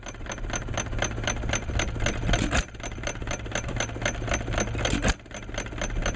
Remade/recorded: recorded